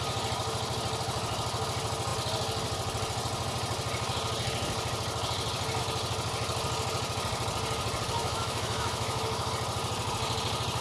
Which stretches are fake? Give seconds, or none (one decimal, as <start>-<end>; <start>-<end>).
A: 8.2-9.5